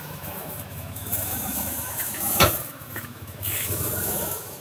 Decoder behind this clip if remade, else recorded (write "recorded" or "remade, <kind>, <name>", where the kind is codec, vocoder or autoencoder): remade, autoencoder, DAC-VAE